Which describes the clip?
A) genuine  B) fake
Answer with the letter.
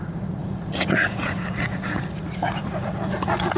B